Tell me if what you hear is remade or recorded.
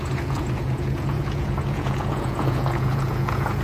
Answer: remade